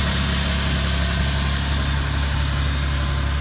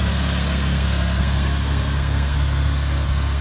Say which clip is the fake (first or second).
second